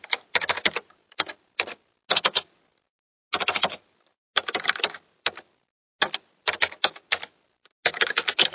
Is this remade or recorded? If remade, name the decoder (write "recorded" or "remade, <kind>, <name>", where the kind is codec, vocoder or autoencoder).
recorded